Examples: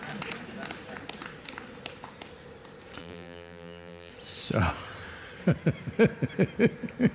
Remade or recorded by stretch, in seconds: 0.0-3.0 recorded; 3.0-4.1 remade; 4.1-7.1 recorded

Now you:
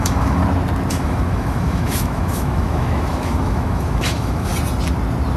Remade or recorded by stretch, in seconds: 0.0-0.4 remade; 0.4-0.9 recorded; 0.9-4.5 remade; 4.5-5.4 recorded